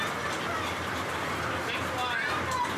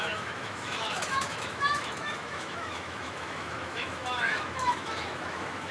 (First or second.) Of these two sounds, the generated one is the second